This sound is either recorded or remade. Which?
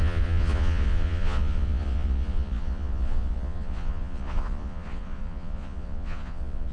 remade